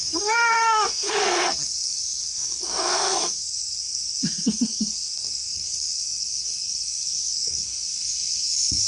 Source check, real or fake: fake